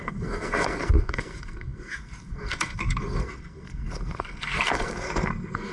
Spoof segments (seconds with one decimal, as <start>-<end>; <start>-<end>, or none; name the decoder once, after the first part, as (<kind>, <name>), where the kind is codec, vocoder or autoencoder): 0.0-5.7 (codec, SNAC)

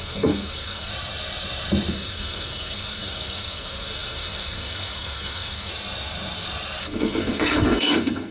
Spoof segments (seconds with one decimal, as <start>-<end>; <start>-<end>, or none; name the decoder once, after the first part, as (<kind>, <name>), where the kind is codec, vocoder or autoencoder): 0.0-0.9 (codec, SNAC); 1.9-5.7; 6.8-8.3

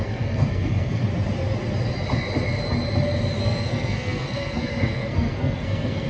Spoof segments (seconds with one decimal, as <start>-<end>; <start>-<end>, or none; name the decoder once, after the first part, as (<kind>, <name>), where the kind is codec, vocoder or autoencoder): 0.0-1.0 (codec, SNAC); 3.4-6.1

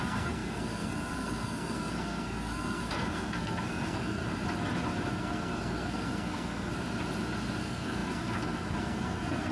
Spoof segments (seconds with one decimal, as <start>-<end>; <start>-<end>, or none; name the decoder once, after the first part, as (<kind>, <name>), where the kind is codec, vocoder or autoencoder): 0.0-4.2 (codec, SNAC); 5.1-6.7; 7.6-9.5

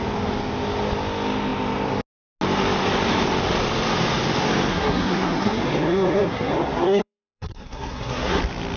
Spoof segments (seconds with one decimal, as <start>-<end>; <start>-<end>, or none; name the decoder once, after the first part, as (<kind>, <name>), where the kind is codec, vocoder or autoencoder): 4.7-8.4 (codec, SNAC)

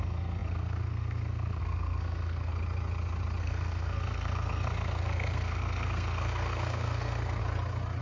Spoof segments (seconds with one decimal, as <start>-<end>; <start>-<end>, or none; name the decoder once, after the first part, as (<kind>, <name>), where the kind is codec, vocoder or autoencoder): 0.0-2.5 (codec, SNAC); 3.4-7.4

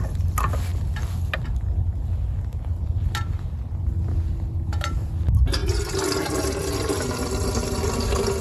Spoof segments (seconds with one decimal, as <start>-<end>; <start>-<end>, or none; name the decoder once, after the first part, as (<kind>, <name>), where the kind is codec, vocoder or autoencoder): none